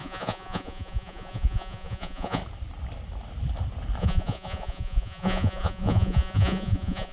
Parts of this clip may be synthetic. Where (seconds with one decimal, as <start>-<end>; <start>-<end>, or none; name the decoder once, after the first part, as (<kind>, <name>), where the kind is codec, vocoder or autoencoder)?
0.0-2.4 (vocoder, Vocos); 4.0-7.1